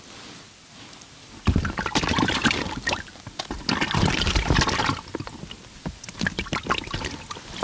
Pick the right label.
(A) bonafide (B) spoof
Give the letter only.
A